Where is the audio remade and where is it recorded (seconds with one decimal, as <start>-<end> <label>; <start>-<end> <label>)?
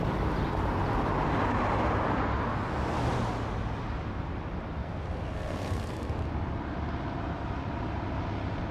0.0-4.8 recorded; 4.8-6.3 remade; 6.3-8.7 recorded